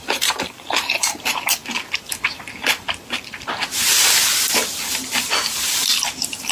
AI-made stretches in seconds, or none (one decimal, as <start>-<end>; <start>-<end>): 0.0-1.6; 5.5-6.5